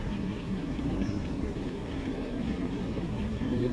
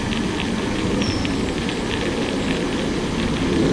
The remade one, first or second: first